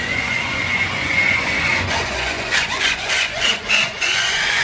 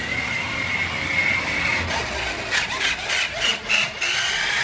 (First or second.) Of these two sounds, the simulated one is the first